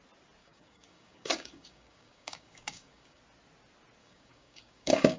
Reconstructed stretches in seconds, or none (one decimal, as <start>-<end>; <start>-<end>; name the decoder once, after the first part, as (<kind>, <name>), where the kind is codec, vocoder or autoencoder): 0.4-3.2 (codec, DAC); 4.0-5.2